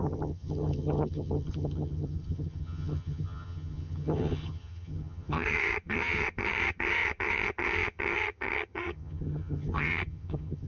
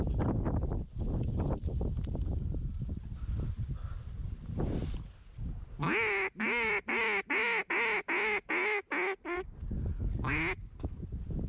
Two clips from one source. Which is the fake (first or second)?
first